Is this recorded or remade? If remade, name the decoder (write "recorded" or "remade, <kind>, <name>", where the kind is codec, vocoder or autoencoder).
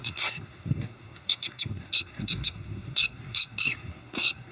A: remade, codec, SNAC